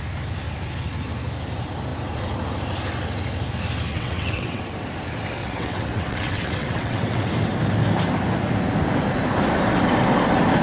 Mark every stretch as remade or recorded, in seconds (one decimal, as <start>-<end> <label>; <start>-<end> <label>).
0.0-3.9 recorded; 3.9-4.6 remade; 4.6-5.4 recorded; 5.4-7.3 remade; 7.3-10.6 recorded